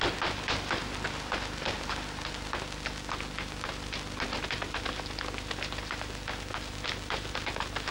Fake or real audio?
real